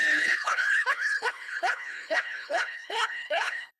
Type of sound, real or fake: fake